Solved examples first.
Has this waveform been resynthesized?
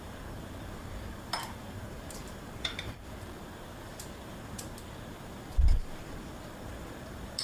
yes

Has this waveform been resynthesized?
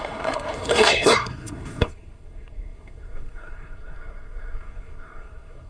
yes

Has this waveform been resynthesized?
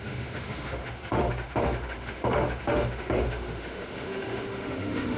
yes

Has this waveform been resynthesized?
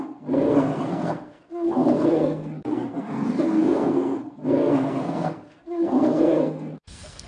yes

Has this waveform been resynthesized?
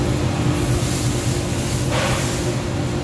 no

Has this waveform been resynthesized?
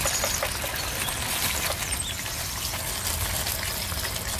no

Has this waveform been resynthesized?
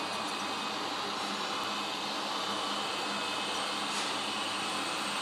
no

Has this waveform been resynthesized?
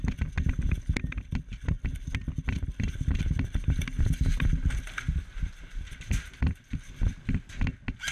no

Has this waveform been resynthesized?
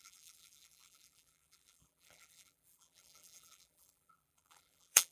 yes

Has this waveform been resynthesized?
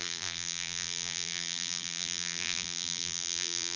yes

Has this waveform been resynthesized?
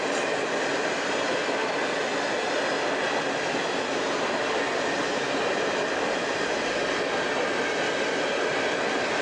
no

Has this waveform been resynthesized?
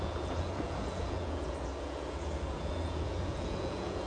yes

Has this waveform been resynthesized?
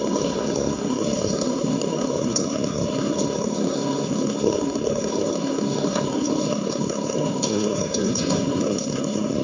yes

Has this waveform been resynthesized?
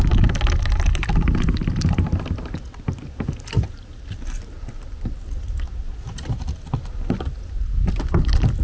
no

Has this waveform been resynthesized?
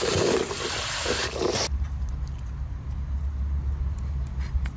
no